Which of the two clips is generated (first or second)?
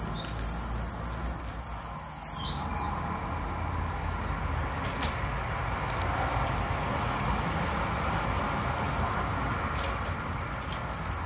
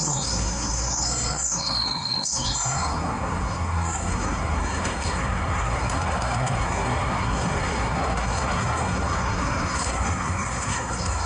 second